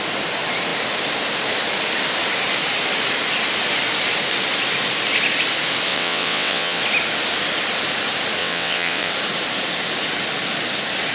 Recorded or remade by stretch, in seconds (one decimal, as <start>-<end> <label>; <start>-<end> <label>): 0.0-5.9 recorded; 5.9-6.8 remade; 6.8-8.4 recorded; 8.4-9.1 remade; 9.1-11.1 recorded